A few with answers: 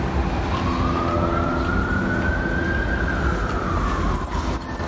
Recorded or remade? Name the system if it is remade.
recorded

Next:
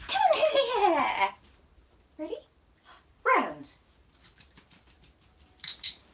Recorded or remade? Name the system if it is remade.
recorded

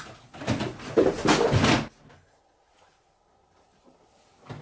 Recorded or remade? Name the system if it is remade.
recorded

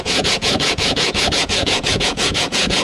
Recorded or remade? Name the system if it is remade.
remade, vocoder, Vocos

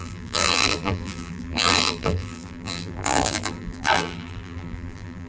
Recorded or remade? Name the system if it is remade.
remade, vocoder, BigVGAN v2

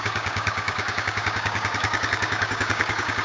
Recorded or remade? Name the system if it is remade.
remade, codec, DAC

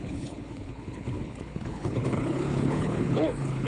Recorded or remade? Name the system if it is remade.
remade, codec, HILCodec